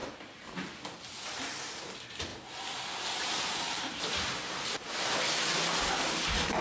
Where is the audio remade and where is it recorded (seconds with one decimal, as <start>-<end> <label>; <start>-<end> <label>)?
0.0-6.6 recorded